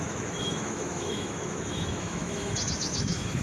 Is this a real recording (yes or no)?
no